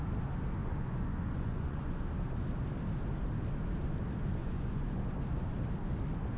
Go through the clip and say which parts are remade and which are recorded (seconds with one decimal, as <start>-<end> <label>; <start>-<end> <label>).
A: 0.0-0.6 recorded; 0.6-2.0 remade; 2.0-4.4 recorded; 4.4-5.0 remade; 5.0-6.4 recorded